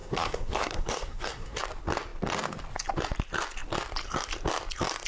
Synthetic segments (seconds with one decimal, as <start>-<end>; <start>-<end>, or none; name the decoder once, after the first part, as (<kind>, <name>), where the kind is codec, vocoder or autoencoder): 0.0-1.6 (codec, SNAC)